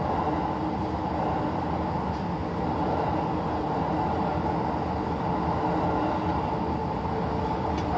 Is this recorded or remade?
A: recorded